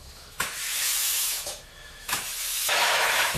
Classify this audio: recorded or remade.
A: remade